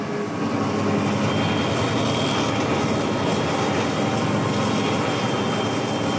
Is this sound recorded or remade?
recorded